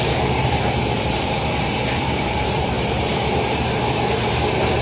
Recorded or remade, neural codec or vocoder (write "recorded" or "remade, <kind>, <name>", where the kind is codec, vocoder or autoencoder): remade, vocoder, BigVGAN v2